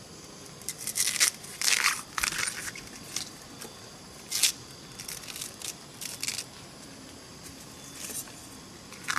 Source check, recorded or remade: recorded